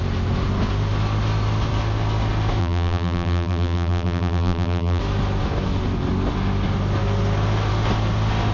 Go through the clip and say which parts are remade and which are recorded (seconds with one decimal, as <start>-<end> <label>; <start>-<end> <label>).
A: 0.0-2.6 recorded; 2.6-5.0 remade; 5.0-8.5 recorded